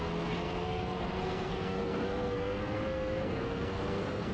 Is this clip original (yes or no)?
no